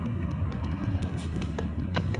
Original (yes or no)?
no